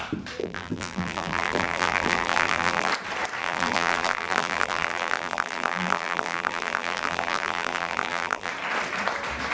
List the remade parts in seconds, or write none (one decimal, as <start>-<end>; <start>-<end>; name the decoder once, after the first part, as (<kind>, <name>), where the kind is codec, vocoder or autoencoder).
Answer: 0.4-2.9 (vocoder, BigVGAN v2); 3.4-8.5